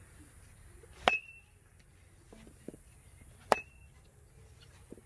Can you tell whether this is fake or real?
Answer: real